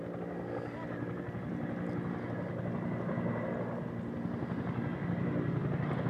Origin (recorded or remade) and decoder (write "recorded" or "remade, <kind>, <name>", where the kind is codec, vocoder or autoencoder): recorded